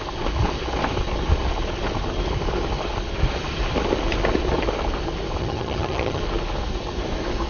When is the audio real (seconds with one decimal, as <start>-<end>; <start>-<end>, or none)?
0.0-5.4; 6.2-7.5